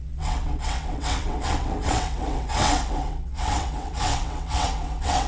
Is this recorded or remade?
remade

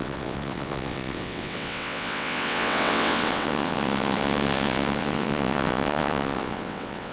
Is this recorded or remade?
remade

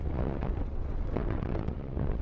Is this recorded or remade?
remade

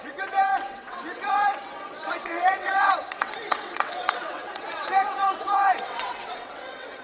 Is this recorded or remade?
remade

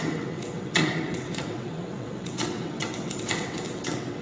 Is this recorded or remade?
remade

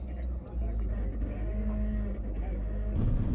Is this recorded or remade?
recorded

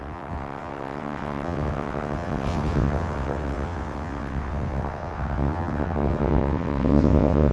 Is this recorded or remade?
remade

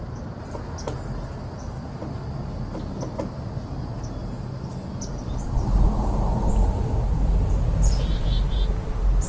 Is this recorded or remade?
recorded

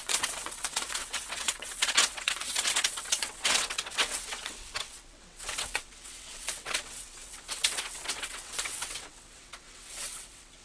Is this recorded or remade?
remade